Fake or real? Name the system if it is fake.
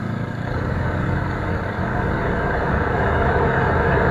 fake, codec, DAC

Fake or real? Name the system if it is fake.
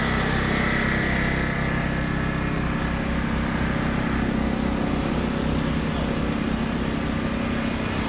real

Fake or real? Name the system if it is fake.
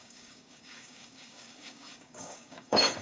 fake, codec, DAC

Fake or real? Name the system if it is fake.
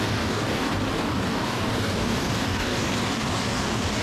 fake, codec, DAC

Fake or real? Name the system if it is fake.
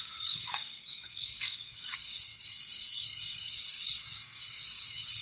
fake, codec, DAC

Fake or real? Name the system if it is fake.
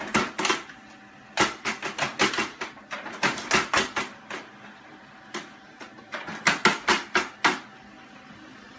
real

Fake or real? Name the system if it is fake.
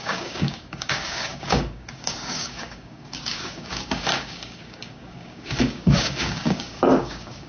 fake, codec, DAC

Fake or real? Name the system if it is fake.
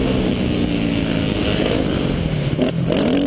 real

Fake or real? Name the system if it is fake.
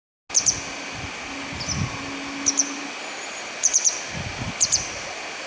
real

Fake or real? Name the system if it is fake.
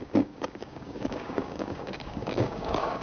fake, codec, DAC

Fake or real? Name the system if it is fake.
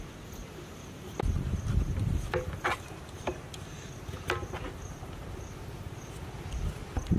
real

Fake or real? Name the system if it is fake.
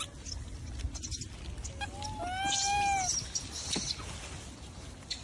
real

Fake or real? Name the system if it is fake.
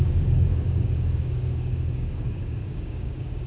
fake, codec, DAC